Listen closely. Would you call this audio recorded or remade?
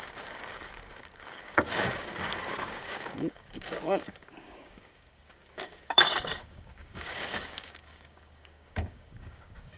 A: remade